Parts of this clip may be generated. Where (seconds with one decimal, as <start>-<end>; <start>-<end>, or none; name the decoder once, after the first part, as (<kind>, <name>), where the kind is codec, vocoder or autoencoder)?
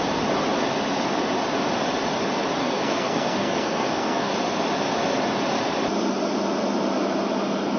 2.6-4.3 (codec, SNAC)